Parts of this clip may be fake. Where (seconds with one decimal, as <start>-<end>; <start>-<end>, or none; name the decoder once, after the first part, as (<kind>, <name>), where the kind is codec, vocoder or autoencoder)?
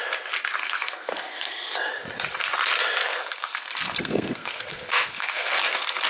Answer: 0.6-1.5 (codec, SNAC); 3.0-5.6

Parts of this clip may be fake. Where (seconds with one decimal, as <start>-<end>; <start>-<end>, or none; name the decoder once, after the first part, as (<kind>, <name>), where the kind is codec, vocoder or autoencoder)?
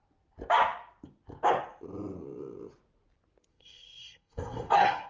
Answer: 3.5-5.1 (codec, SNAC)